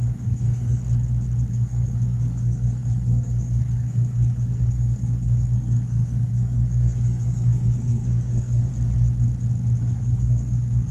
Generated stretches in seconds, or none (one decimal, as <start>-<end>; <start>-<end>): 0.0-0.8; 1.5-8.7; 9.8-10.9

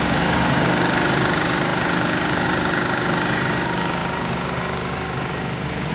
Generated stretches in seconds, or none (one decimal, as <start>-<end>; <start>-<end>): 0.0-5.9

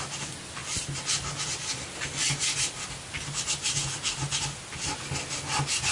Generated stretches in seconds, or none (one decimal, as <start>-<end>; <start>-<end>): none